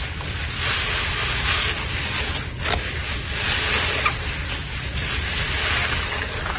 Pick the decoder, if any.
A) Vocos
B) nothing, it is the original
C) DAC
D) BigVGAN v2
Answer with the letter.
B